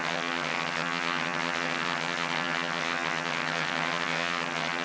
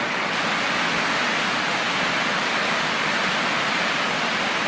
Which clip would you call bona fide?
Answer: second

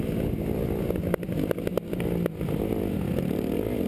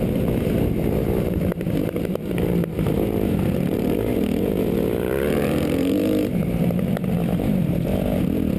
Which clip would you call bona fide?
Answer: first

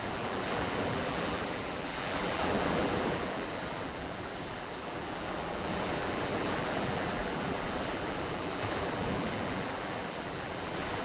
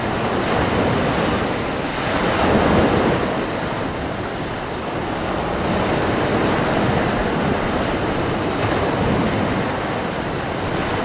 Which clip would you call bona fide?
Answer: second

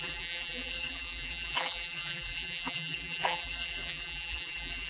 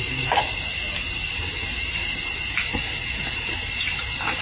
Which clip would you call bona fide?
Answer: second